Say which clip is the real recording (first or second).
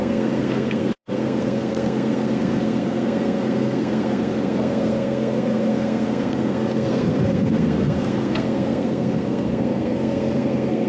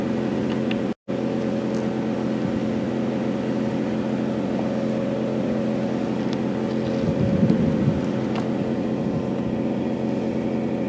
second